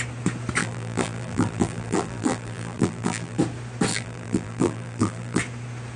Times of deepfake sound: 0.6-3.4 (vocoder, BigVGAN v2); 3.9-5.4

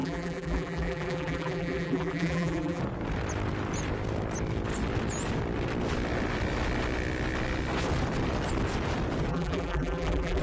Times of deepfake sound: 0.0-2.8 (vocoder, BigVGAN v2); 9.3-10.4

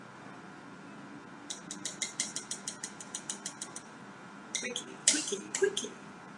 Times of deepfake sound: 5.0-5.9 (vocoder, BigVGAN v2)

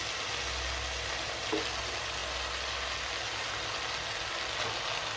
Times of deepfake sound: none

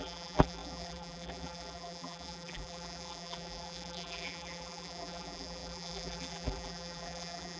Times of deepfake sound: 0.0-7.6 (vocoder, BigVGAN v2)